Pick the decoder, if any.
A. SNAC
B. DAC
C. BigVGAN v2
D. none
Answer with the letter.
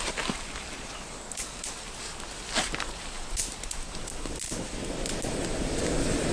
D